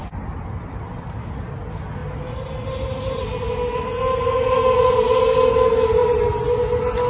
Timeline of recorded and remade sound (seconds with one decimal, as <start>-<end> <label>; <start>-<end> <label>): 0.0-7.1 recorded